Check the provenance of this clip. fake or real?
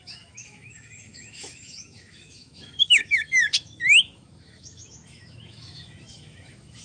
fake